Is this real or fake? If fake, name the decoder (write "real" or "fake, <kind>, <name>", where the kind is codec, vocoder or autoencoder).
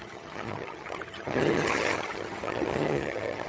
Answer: fake, vocoder, HiFi-GAN